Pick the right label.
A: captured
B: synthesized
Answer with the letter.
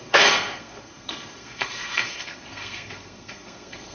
B